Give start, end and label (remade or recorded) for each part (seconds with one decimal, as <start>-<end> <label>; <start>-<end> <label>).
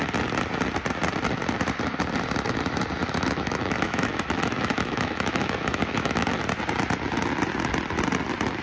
0.0-3.0 recorded; 3.0-6.4 remade; 6.4-8.6 recorded